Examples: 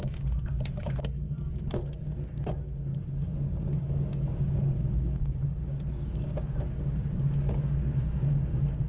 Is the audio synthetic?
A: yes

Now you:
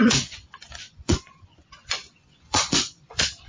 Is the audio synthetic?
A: yes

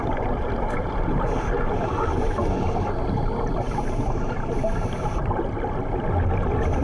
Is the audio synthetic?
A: no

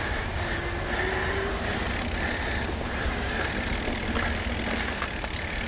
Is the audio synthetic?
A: no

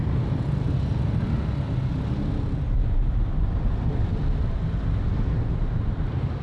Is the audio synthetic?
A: no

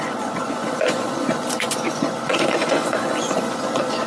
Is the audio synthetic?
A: yes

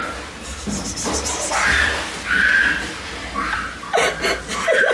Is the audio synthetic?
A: no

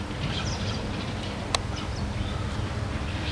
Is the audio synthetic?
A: yes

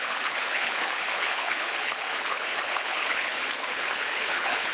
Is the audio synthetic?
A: yes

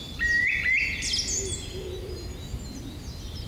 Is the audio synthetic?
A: no